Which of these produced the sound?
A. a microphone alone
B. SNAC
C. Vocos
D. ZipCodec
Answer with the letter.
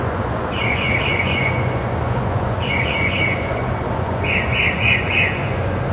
C